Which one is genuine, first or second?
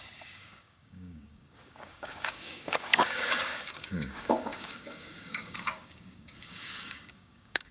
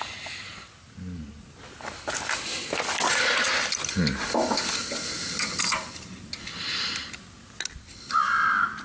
second